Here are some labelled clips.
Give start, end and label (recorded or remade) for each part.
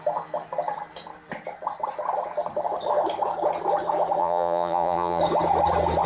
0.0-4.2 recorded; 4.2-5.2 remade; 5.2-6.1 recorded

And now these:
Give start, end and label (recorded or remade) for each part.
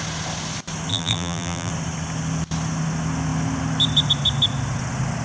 0.0-0.9 recorded; 0.9-1.7 remade; 1.7-5.2 recorded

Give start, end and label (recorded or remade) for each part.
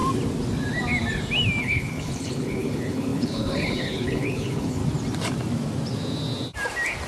0.0-1.6 recorded; 1.6-4.8 remade; 4.8-7.1 recorded